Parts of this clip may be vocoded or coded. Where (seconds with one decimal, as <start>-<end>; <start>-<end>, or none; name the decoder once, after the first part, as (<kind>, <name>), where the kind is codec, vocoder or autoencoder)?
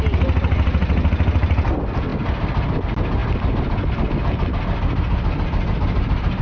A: none